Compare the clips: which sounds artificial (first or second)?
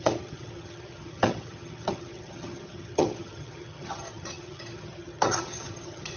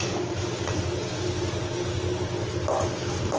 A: first